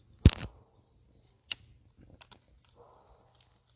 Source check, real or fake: real